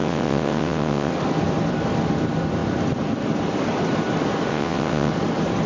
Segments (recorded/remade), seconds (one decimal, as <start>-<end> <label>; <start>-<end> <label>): 0.0-1.1 remade; 1.1-4.5 recorded; 4.5-5.1 remade; 5.1-5.7 recorded

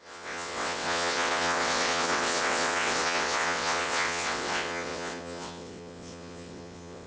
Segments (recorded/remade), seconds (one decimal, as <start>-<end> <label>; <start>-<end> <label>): 0.0-7.1 remade

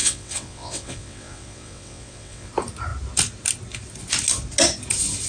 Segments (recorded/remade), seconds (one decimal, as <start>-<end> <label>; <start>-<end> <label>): 0.0-2.5 remade; 2.5-5.3 recorded

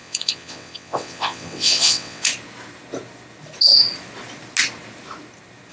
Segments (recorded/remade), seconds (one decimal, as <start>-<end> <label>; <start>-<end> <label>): 0.0-2.3 remade; 2.3-5.7 recorded

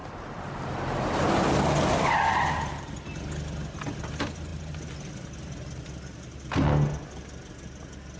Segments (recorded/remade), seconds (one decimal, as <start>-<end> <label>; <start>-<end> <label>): 0.0-8.2 recorded